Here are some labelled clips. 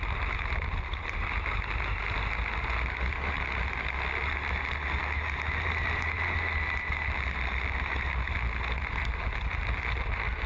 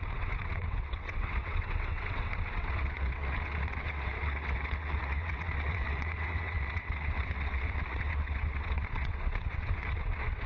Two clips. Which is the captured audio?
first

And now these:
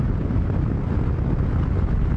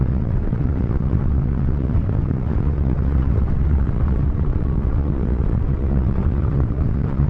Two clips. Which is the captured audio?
first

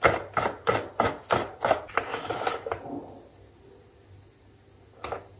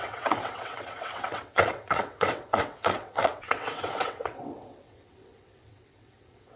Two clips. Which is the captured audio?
first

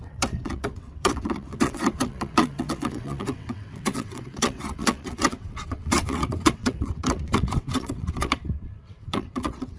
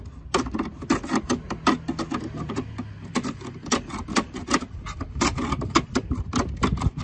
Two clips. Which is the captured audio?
second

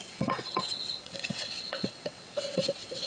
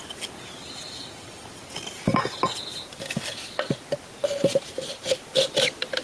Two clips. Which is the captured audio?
second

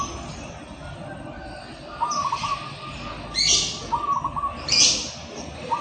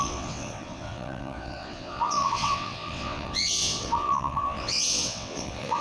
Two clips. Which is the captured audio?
first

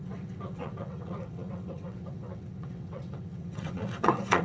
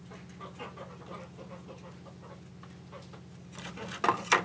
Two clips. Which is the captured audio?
second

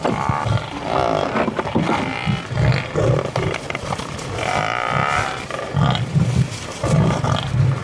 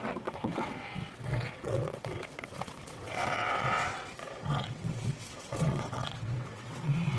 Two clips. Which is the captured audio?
first